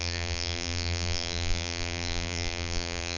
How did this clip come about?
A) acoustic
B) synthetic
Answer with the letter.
B